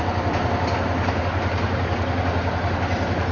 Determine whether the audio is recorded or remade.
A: recorded